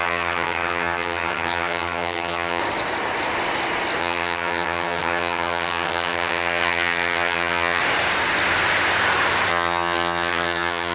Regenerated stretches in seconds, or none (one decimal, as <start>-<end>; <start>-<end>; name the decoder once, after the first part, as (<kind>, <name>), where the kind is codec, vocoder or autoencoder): 0.0-2.6 (vocoder, HiFi-GAN); 4.0-7.8; 9.5-10.9